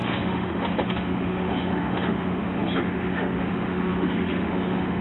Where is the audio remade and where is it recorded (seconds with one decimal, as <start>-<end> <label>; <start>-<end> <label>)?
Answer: 0.0-5.0 remade

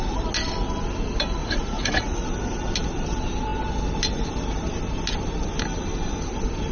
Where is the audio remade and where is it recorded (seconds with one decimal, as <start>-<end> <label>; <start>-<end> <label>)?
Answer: 0.0-1.4 recorded; 1.4-2.2 remade; 2.2-6.7 recorded

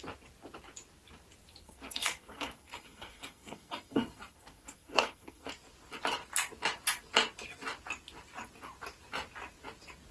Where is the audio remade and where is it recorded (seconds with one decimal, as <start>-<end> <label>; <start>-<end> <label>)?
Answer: 0.0-1.6 recorded; 1.6-5.5 remade; 5.5-10.1 recorded

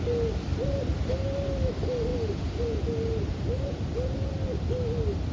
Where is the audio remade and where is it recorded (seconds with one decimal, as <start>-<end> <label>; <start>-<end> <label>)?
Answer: 0.0-0.5 recorded; 0.5-1.1 remade; 1.1-5.3 recorded

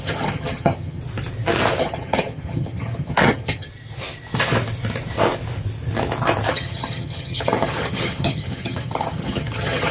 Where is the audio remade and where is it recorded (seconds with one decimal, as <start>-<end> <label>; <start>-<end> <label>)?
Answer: 0.0-1.0 remade; 1.0-1.8 recorded; 1.8-3.7 remade; 3.7-6.5 recorded; 6.5-9.9 remade

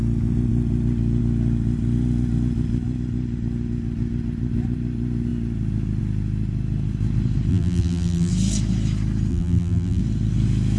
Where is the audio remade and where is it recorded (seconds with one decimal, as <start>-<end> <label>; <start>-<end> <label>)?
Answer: 0.0-7.5 recorded; 7.5-8.3 remade; 8.3-9.3 recorded; 9.3-10.0 remade; 10.0-10.8 recorded

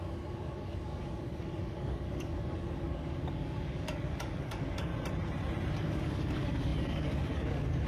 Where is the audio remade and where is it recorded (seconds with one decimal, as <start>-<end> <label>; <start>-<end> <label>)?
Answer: 0.0-4.9 remade; 4.9-5.8 recorded; 5.8-7.9 remade

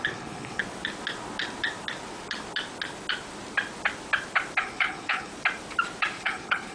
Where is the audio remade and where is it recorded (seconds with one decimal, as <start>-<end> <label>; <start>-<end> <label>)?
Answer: 0.0-0.6 remade; 0.6-4.6 recorded; 4.6-5.3 remade; 5.3-6.2 recorded; 6.2-6.7 remade